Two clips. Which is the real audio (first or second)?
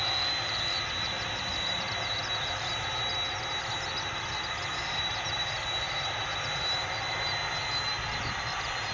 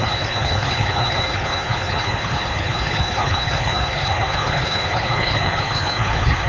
first